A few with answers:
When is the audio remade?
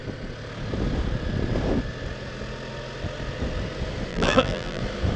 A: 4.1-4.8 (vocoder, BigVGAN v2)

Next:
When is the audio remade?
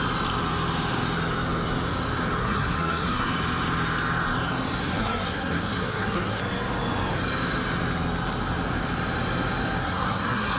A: 2.4-3.3 (codec, SNAC); 4.8-6.4; 9.8-10.6